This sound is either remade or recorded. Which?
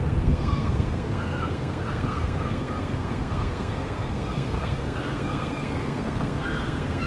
remade